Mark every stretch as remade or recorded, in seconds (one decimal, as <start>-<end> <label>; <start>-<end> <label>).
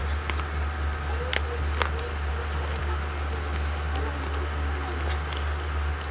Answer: 0.0-6.1 recorded